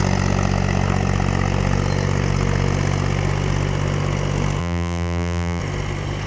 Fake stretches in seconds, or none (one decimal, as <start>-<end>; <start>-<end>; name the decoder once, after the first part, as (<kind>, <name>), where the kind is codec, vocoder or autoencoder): 4.6-5.6 (vocoder, BigVGAN v2)